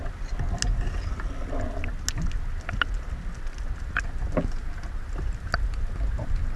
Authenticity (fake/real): real